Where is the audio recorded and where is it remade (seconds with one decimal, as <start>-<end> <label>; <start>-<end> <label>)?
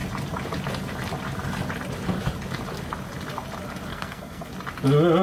0.0-3.9 recorded; 3.9-4.5 remade; 4.5-5.2 recorded